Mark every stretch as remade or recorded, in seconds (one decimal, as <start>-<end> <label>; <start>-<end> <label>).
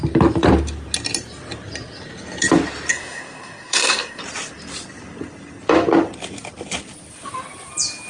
0.0-2.9 recorded; 2.9-4.2 remade; 4.2-8.1 recorded